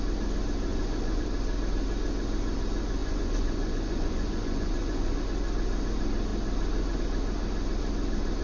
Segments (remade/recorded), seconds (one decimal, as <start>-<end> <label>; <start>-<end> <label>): 0.0-0.7 recorded; 0.7-1.2 remade; 1.2-3.0 recorded; 3.0-5.2 remade; 5.2-8.4 recorded